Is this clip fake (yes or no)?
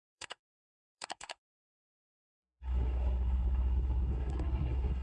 yes